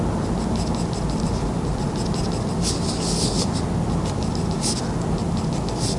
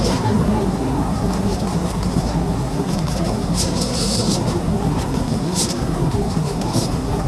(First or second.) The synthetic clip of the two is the second